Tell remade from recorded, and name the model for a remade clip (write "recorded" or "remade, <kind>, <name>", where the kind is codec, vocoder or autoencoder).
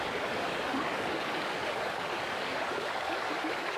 remade, codec, DAC